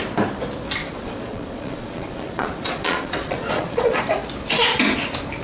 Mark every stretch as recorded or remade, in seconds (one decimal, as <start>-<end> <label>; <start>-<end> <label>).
0.0-0.8 recorded; 0.8-4.0 remade; 4.0-5.4 recorded